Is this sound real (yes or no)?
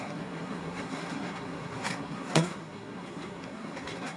no